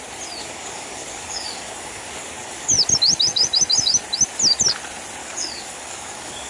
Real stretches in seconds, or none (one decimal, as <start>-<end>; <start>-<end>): 0.0-0.4; 2.7-5.2